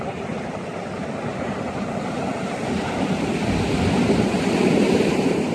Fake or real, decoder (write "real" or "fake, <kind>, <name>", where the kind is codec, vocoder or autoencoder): real